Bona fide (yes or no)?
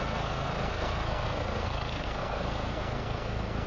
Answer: no